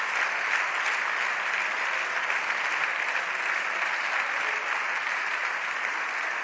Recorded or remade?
recorded